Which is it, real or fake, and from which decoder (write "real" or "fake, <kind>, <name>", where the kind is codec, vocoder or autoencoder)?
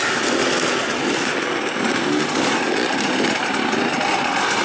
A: real